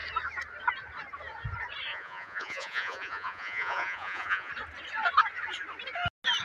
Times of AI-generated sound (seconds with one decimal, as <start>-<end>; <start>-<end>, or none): 1.9-4.5